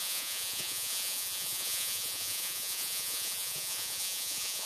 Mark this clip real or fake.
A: fake